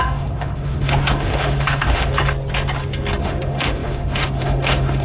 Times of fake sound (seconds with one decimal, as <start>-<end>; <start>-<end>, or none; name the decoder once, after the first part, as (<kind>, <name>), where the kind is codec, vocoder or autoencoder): 0.0-2.1 (autoencoder, DAC-VAE); 3.2-5.0